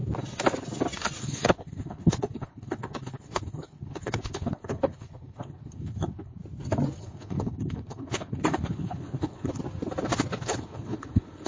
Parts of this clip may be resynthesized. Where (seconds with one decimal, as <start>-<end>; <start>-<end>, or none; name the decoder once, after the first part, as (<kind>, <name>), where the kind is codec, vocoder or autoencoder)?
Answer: 1.2-6.4 (codec, HILCodec); 7.0-9.6; 10.4-11.5